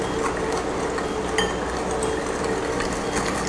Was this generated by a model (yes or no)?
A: no